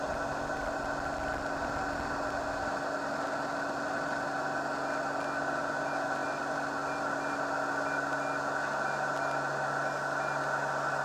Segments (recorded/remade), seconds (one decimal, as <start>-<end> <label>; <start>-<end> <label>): 0.0-11.0 recorded